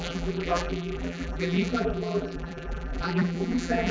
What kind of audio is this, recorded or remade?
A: remade